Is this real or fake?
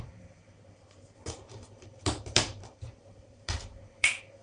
fake